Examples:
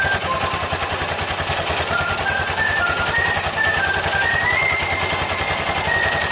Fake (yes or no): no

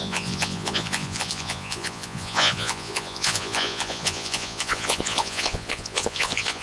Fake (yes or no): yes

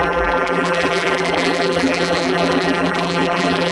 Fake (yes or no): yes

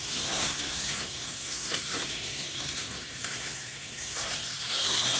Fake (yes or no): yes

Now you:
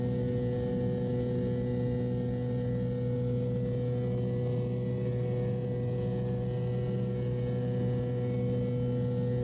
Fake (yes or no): no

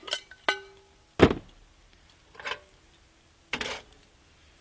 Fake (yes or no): no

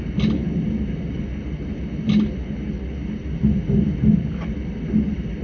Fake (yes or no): no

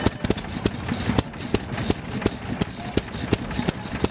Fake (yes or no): no